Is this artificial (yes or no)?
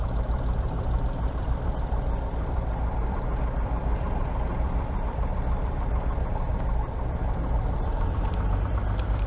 yes